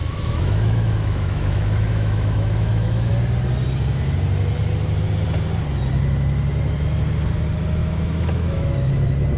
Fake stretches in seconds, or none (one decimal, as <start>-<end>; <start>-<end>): 0.0-3.1; 7.8-8.9

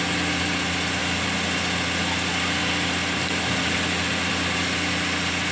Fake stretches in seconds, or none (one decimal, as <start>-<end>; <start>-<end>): none

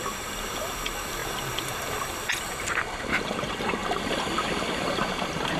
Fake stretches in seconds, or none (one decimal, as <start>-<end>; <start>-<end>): none

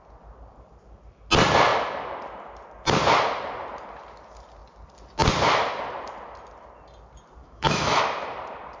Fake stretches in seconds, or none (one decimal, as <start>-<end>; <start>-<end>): 7.4-8.0

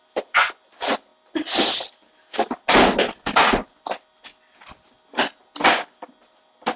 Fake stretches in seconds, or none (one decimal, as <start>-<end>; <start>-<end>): none

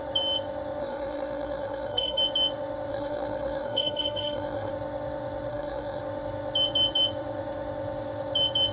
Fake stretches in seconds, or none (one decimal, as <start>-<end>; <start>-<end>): 0.8-2.2; 2.9-4.7; 5.5-6.0